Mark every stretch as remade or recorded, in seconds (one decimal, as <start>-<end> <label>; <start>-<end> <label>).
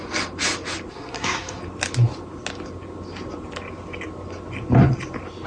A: 0.0-0.9 recorded; 0.9-1.6 remade; 1.6-5.5 recorded